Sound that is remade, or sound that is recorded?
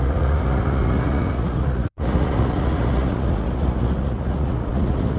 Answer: remade